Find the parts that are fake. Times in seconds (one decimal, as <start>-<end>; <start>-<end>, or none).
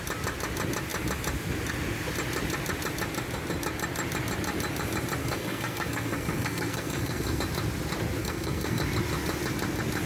5.2-7.4; 8.2-8.8